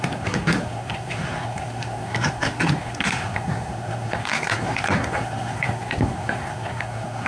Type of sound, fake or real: fake